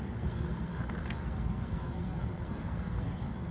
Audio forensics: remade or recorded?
remade